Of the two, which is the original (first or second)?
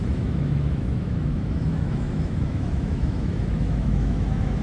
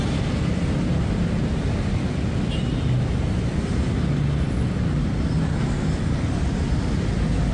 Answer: second